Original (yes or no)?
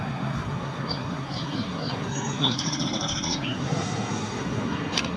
no